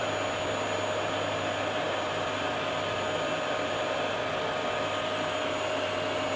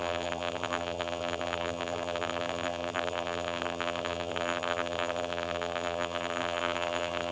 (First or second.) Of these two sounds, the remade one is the second